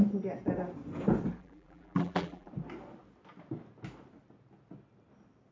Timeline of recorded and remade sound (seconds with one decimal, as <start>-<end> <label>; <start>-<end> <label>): 0.0-1.4 recorded; 1.4-2.5 remade; 2.5-5.5 recorded